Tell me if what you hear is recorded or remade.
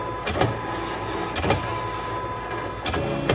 recorded